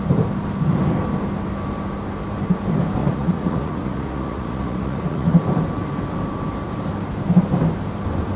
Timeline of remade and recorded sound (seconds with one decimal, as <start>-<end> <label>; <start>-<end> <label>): 0.0-3.0 recorded; 3.0-5.4 remade; 5.4-8.4 recorded